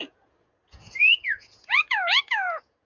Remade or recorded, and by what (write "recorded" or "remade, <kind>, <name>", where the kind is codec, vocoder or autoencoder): remade, vocoder, Vocos